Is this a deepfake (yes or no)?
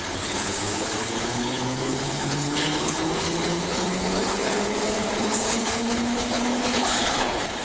yes